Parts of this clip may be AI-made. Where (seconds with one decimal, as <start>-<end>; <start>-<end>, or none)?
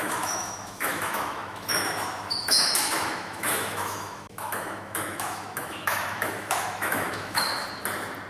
0.0-7.5